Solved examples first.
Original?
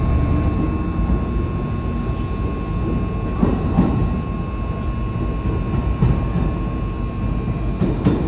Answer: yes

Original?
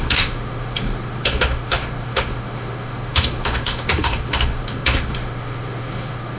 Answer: no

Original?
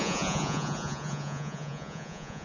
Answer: no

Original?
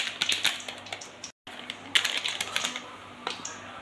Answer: yes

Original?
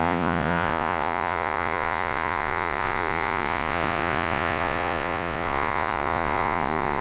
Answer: no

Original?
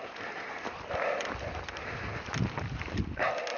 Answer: yes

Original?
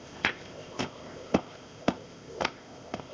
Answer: no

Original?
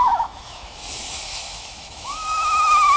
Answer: no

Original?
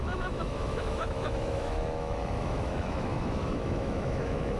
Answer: no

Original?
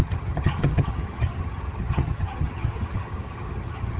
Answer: no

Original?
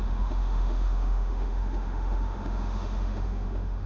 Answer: no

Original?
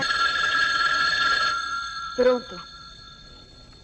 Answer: no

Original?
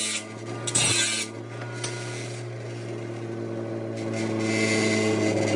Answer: yes